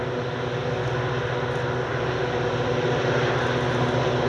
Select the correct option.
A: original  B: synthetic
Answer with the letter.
A